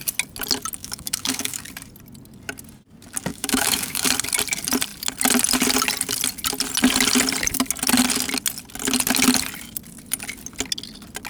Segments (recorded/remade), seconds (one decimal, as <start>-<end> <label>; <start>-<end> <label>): 0.0-0.8 recorded; 0.8-1.7 remade; 1.7-3.3 recorded; 3.3-4.1 remade; 4.1-11.3 recorded